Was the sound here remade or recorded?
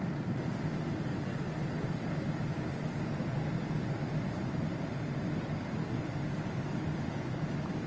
recorded